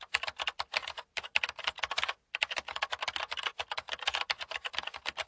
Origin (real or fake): real